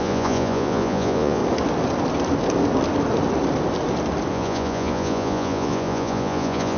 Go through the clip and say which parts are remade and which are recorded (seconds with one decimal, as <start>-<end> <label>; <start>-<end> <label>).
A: 0.0-1.4 remade; 1.4-4.3 recorded; 4.3-6.8 remade

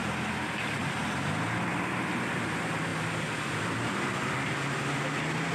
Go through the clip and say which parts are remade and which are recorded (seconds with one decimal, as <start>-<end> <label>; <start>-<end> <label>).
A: 0.0-1.7 recorded; 1.7-2.4 remade; 2.4-2.9 recorded; 2.9-4.5 remade; 4.5-5.5 recorded

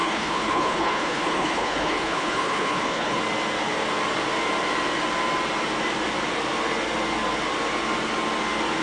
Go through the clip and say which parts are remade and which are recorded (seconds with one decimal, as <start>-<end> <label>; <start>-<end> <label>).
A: 0.0-3.2 remade; 3.2-8.8 recorded

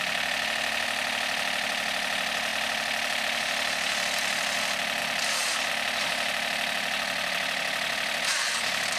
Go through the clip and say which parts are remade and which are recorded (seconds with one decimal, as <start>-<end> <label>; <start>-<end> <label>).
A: 0.0-9.0 recorded

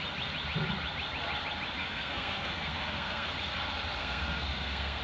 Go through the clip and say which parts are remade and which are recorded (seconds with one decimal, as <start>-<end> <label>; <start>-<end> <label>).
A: 0.0-1.8 recorded; 1.8-3.3 remade; 3.3-4.0 recorded; 4.0-5.0 remade

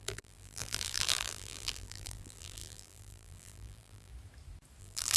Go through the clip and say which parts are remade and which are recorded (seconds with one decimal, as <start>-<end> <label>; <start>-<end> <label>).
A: 0.0-4.1 remade; 4.1-4.8 recorded; 4.8-5.2 remade

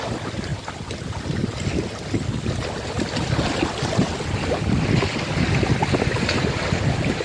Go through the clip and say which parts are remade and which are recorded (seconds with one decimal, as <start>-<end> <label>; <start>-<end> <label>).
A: 0.0-7.2 recorded

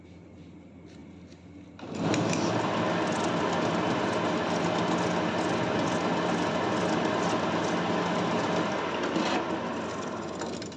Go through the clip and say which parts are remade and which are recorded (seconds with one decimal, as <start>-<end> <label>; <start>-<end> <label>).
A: 0.0-10.8 recorded